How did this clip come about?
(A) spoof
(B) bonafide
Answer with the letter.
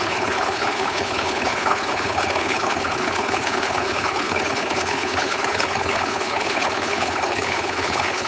A